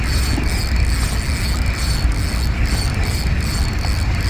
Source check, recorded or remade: recorded